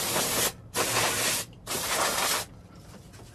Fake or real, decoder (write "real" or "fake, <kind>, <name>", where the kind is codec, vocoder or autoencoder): real